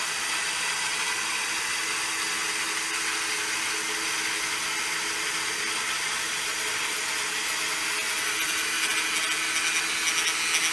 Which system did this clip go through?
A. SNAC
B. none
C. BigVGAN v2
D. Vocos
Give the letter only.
B